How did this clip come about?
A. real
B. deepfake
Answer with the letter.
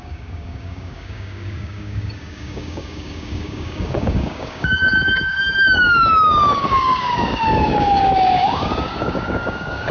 B